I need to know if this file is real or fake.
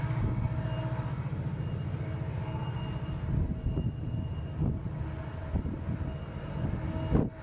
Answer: real